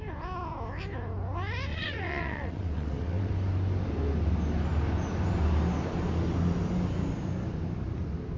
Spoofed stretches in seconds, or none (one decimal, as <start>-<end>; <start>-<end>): 1.7-3.3